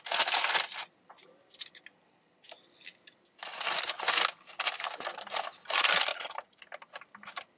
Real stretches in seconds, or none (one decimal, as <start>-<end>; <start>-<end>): 0.0-6.1; 6.6-7.6